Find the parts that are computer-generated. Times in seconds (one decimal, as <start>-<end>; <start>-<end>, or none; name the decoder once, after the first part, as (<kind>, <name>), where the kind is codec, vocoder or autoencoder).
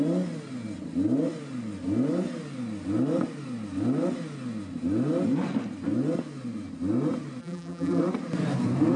7.4-8.0 (vocoder, BigVGAN v2)